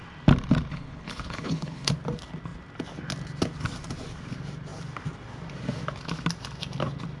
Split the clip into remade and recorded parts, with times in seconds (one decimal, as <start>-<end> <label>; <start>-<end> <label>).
0.0-0.7 recorded; 0.7-1.9 remade; 1.9-7.2 recorded